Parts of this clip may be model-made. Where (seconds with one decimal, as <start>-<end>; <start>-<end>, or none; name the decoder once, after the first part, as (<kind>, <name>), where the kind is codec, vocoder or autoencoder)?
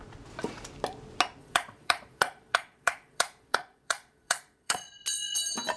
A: 1.4-4.9 (vocoder, Vocos)